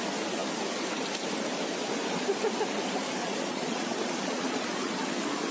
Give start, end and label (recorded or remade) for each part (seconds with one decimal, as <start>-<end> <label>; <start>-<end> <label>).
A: 0.0-3.2 recorded; 3.2-5.1 remade; 5.1-5.5 recorded